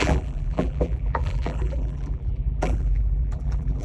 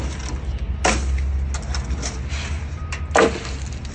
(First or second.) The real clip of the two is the second